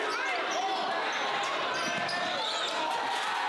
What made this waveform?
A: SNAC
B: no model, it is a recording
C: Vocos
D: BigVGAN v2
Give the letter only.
B